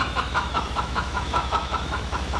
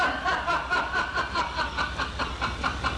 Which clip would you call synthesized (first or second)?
first